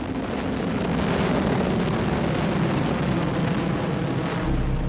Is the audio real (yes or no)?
yes